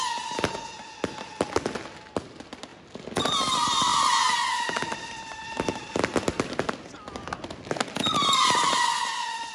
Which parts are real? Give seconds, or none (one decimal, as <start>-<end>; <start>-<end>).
0.0-9.5